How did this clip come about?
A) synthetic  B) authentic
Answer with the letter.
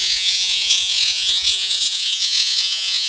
A